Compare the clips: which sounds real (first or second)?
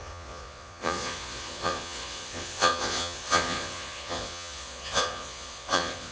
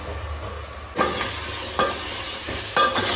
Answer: second